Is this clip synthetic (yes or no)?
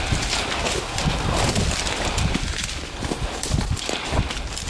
no